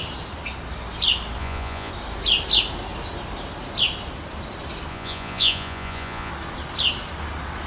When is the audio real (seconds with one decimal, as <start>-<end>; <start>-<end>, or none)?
0.0-1.4; 1.9-4.9; 6.3-7.7